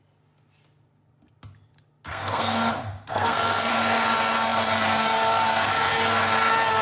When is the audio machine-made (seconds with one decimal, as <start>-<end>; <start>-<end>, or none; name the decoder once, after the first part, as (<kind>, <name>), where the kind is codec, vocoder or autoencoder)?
2.1-2.7 (codec, SNAC); 3.1-3.7